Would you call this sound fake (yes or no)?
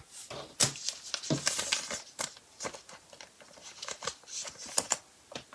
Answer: no